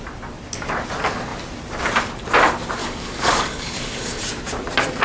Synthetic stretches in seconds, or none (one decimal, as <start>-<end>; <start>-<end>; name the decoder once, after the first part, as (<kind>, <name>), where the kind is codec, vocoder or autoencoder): 2.8-4.2 (codec, DAC)